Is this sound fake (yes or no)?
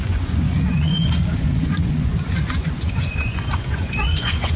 yes